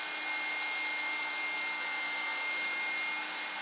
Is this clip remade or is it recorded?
recorded